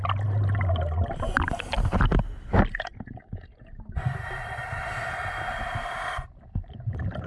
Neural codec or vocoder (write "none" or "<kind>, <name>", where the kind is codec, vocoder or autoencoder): none